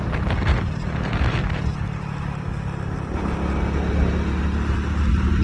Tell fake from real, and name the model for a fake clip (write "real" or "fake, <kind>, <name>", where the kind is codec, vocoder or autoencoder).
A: real